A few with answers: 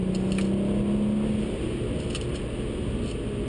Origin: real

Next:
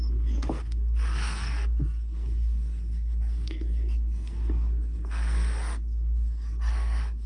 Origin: fake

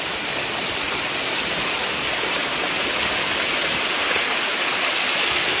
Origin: real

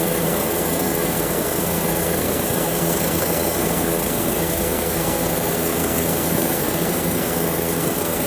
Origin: fake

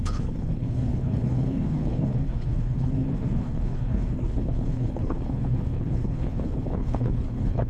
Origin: fake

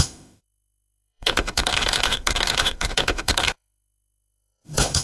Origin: fake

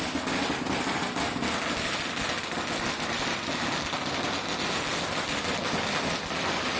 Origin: real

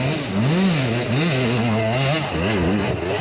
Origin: real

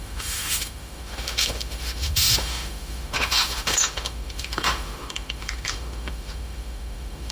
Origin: fake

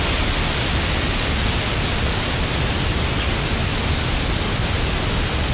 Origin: real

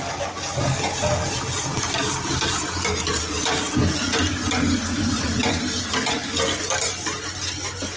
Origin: real